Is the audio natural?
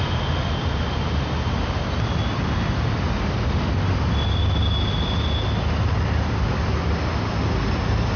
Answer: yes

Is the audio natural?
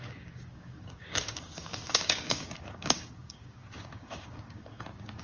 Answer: no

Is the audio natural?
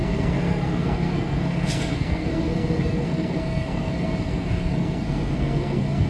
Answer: no